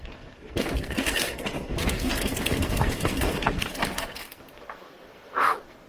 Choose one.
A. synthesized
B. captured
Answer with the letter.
A